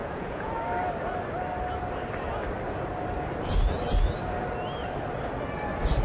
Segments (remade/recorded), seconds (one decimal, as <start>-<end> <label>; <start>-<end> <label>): 0.0-0.5 remade; 0.5-6.0 recorded